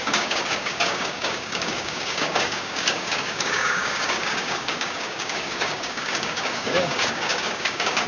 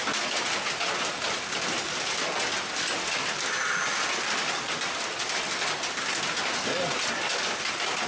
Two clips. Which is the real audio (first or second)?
second